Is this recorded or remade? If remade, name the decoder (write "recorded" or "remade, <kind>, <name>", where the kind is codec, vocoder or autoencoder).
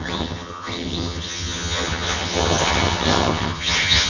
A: remade, vocoder, HiFi-GAN